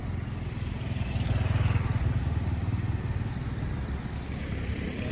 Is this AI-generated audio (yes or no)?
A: yes